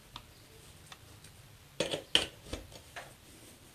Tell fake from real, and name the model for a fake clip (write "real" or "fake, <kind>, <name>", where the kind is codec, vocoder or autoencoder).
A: real